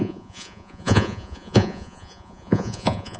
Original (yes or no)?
no